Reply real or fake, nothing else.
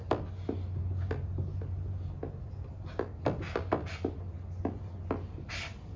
real